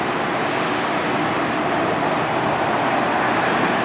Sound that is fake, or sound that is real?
real